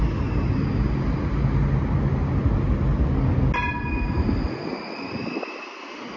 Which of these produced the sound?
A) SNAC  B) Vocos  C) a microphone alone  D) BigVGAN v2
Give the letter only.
C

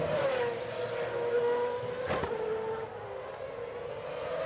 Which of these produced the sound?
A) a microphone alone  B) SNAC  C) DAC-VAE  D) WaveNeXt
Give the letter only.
A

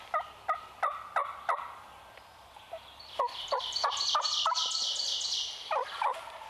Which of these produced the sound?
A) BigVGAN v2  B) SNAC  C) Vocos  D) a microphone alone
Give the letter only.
A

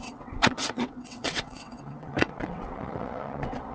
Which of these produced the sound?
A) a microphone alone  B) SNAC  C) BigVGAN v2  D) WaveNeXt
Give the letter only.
D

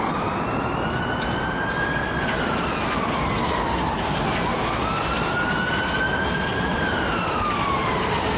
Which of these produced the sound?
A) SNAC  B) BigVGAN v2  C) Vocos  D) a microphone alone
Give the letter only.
D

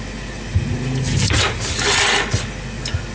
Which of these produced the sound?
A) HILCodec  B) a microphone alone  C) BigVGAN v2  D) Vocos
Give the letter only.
B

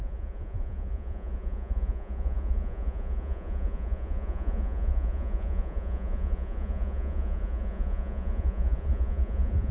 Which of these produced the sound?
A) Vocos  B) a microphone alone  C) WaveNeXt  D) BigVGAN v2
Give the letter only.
A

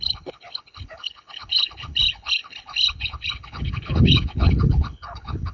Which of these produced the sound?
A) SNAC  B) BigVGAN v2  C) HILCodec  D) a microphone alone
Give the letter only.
C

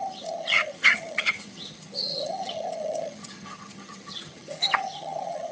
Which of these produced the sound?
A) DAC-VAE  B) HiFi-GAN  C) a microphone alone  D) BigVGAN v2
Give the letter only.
B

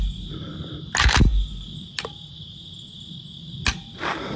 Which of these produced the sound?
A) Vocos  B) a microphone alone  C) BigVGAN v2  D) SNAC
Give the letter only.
B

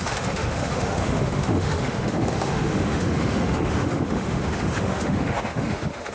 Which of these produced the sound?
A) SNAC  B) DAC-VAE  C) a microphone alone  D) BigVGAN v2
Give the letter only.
B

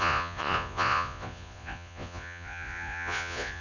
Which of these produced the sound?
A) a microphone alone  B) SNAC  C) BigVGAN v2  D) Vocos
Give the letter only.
D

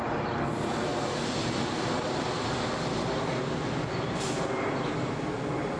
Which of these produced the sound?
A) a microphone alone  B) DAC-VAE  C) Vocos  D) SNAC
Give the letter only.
A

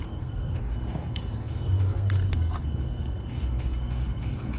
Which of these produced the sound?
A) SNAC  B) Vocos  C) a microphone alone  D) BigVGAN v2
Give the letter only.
A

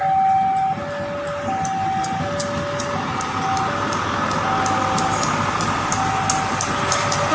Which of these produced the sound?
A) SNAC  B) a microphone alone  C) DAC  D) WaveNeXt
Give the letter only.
B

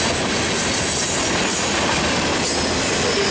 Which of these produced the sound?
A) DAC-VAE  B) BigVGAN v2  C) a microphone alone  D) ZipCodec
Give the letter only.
C